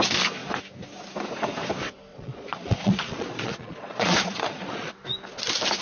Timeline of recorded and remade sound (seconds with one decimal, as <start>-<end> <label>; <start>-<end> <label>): 0.0-2.1 recorded; 2.1-4.9 remade; 4.9-5.8 recorded